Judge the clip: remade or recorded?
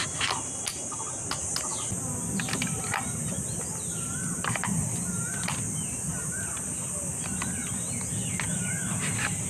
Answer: recorded